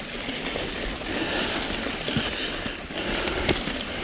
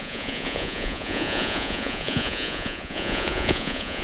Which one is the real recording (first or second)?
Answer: first